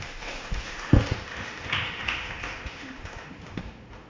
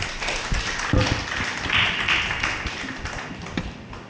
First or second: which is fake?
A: first